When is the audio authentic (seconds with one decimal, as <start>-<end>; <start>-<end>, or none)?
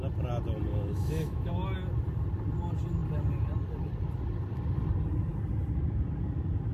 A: 0.0-0.7; 1.5-6.7